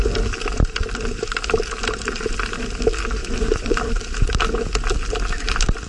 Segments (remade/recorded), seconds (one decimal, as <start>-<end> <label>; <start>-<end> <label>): 0.0-3.2 recorded; 3.2-3.8 remade; 3.8-5.9 recorded